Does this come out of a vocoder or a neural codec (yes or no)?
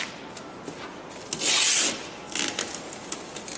no